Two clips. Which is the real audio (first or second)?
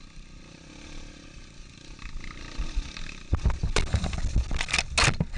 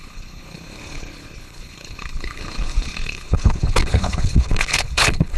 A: first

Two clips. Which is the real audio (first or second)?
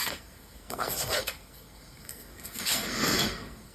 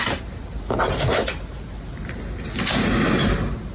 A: second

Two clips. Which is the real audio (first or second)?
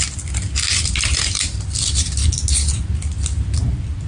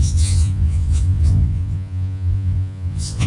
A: first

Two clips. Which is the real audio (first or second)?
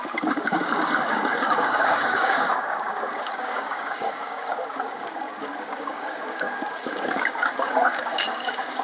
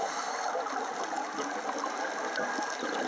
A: second